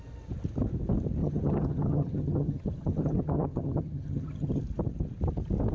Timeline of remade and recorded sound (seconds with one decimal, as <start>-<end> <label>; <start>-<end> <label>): 0.0-1.2 recorded; 1.2-4.6 remade; 4.6-5.7 recorded